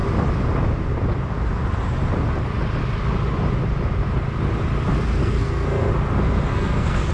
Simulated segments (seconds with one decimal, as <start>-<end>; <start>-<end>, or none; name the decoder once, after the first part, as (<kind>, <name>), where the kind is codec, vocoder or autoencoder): 5.2-5.9 (codec, SNAC); 6.5-7.1